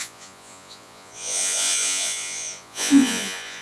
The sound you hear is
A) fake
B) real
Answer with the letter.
A